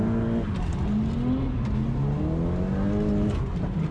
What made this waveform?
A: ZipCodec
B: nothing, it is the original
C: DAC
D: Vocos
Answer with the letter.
B